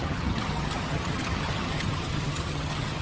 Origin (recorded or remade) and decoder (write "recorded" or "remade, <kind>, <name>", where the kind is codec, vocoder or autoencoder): remade, vocoder, HiFi-GAN